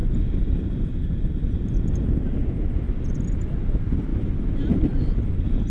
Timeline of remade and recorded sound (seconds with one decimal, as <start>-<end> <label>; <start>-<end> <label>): 0.0-4.1 recorded; 4.1-5.3 remade; 5.3-5.7 recorded